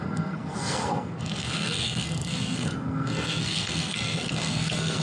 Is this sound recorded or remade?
remade